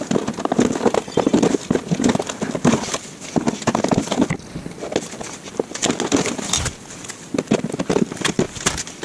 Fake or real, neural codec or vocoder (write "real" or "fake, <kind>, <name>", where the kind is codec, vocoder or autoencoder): real